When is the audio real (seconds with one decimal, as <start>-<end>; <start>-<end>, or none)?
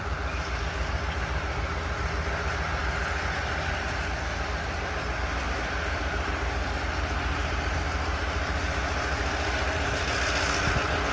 0.0-11.1